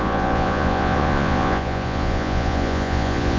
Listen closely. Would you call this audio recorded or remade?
remade